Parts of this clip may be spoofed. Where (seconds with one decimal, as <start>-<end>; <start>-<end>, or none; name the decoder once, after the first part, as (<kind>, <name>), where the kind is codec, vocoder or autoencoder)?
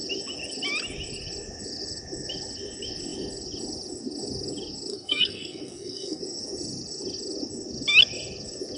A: 4.9-6.2 (codec, SNAC)